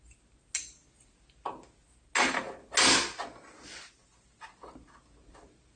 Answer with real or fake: real